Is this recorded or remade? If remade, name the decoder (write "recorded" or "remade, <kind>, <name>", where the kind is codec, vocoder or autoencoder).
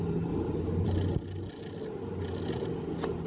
recorded